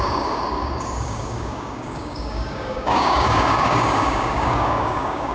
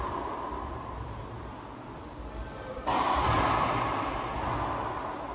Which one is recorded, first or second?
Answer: second